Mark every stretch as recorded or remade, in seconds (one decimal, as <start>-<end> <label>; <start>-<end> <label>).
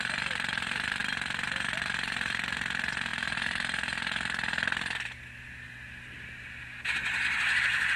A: 0.0-3.1 remade; 3.1-7.6 recorded; 7.6-8.0 remade